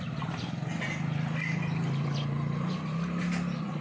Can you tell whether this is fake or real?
fake